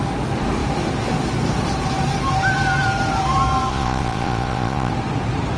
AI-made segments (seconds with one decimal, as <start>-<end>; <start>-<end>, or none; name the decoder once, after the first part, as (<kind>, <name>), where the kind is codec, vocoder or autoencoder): 3.7-4.9 (vocoder, Vocos)